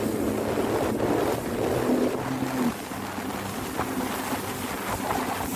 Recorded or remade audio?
recorded